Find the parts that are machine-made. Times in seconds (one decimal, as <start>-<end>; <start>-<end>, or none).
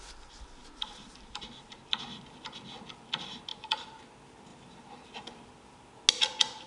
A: none